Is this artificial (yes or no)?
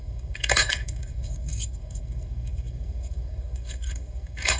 yes